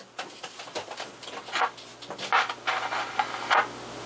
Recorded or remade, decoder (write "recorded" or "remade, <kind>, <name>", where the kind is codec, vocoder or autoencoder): recorded